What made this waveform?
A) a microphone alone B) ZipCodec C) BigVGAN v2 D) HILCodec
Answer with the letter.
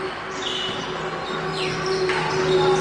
A